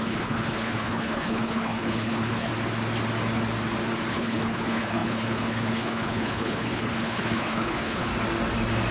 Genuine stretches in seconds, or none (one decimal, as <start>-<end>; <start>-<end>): 2.5-4.1; 8.1-8.9